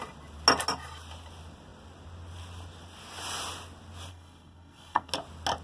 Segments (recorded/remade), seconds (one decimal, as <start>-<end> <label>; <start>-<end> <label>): 0.0-4.1 recorded; 4.1-5.1 remade; 5.1-5.6 recorded